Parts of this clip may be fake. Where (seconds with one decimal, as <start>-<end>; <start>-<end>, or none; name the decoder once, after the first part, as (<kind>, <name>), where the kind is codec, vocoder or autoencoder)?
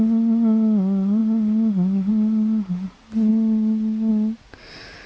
none